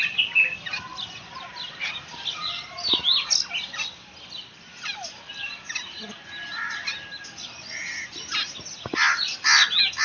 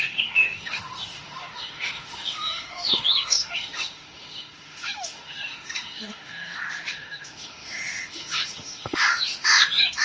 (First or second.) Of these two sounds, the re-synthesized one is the second